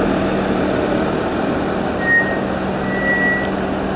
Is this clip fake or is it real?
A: real